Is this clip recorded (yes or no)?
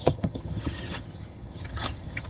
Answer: no